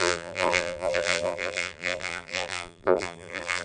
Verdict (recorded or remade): remade